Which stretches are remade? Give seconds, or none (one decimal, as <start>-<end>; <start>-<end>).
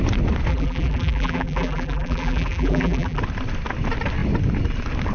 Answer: 0.5-3.2